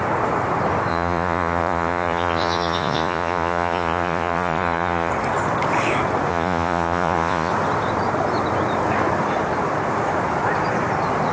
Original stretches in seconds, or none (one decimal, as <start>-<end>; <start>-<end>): 0.0-0.9; 5.1-6.3; 7.5-11.3